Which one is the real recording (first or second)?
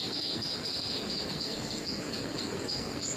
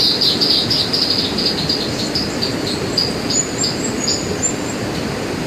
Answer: second